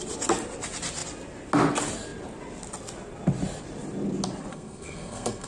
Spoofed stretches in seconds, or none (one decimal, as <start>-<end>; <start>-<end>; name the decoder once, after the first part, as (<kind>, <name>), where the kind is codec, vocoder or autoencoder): 4.5-5.5 (codec, SNAC)